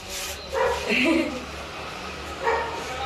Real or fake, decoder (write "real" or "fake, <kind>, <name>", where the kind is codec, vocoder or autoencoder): real